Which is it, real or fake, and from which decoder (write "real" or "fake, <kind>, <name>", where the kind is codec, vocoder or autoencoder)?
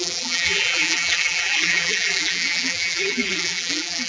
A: fake, vocoder, BigVGAN v2